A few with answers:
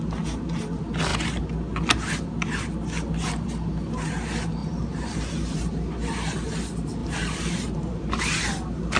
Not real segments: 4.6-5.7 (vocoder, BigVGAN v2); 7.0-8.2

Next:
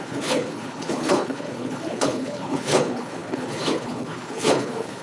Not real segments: 0.0-5.0 (codec, HILCodec)

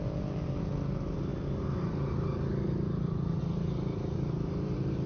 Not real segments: none

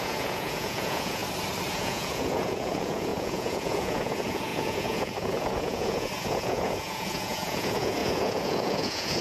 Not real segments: 0.0-1.2 (vocoder, Vocos); 1.7-9.2